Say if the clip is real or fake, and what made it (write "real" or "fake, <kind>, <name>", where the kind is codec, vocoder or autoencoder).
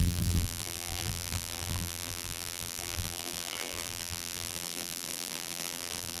fake, vocoder, BigVGAN v2